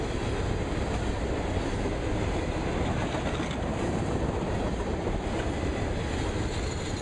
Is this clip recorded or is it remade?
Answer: recorded